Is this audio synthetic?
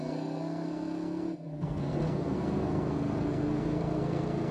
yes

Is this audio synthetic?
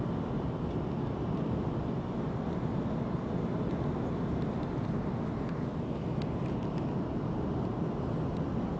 no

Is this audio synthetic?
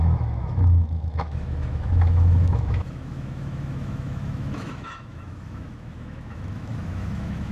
yes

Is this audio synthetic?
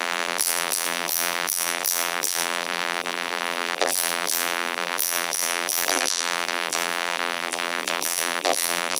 yes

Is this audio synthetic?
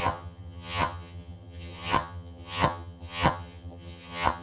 yes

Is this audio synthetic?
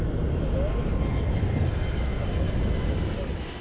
no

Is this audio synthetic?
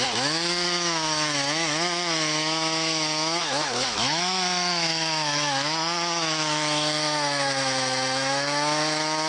yes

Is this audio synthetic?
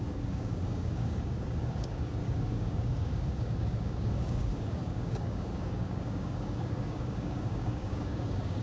yes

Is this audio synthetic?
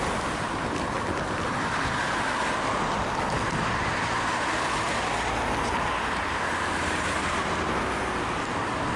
no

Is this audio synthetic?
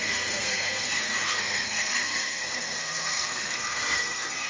yes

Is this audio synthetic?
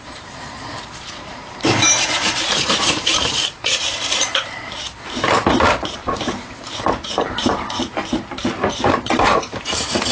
yes